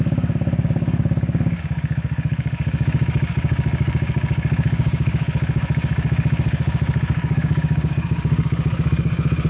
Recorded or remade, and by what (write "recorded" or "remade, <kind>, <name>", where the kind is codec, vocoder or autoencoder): remade, codec, DAC